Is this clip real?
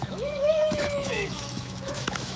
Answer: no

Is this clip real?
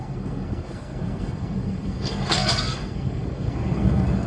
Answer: no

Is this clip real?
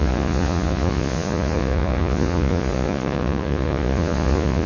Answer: no